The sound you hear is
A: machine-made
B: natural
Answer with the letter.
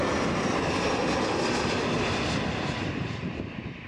B